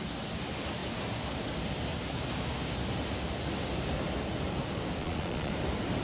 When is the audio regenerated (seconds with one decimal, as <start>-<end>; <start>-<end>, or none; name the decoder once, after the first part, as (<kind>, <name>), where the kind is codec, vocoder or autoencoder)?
5.0-5.5 (vocoder, Vocos)